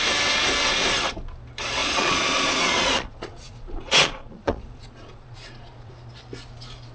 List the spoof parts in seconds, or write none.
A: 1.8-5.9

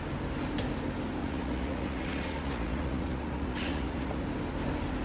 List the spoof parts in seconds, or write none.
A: 1.2-4.2